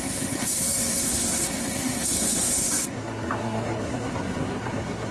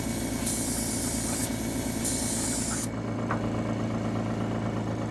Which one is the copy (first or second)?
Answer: first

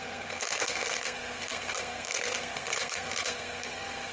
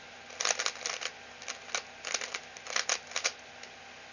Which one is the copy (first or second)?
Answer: first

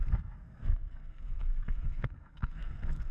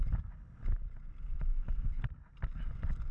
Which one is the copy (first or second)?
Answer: first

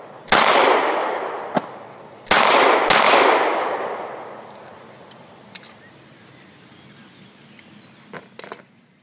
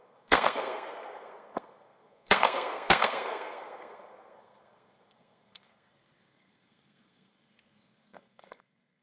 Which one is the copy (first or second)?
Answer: second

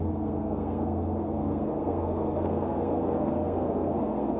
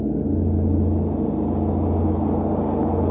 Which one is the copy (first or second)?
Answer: first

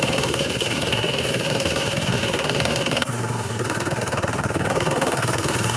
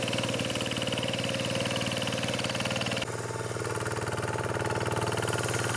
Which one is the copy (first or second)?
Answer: first